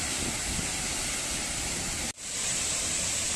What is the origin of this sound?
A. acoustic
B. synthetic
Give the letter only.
B